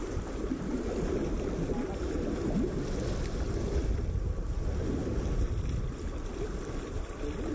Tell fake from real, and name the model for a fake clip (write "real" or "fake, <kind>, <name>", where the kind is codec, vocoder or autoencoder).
real